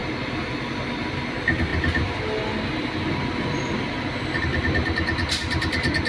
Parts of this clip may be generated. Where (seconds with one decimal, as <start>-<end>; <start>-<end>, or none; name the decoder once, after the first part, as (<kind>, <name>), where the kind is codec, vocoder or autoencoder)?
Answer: none